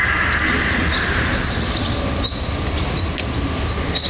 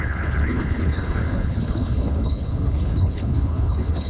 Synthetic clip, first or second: second